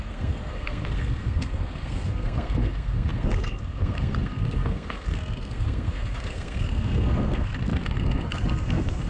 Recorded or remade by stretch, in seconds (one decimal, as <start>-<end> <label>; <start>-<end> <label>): 0.0-9.1 remade